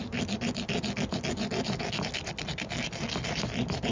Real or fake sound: real